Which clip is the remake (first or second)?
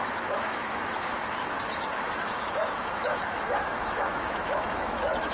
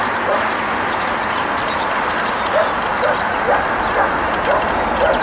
first